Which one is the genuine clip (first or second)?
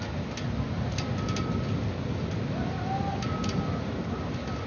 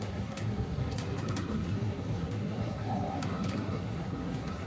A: first